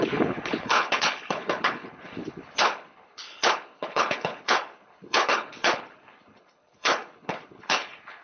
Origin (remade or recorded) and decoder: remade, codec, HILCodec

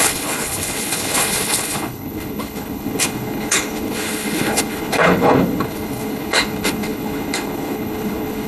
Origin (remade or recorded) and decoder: remade, codec, HILCodec